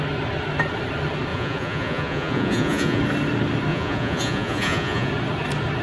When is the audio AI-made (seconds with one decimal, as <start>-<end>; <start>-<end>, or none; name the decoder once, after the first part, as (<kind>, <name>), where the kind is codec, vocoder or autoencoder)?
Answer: 1.3-3.0 (vocoder, Vocos); 3.7-5.1